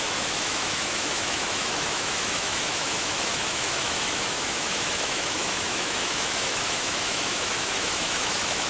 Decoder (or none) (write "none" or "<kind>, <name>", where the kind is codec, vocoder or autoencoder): autoencoder, DAC-VAE